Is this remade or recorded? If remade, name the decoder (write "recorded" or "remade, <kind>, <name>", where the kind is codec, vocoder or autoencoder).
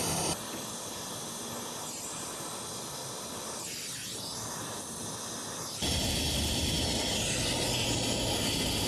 recorded